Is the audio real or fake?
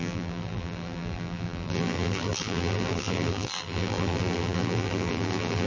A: fake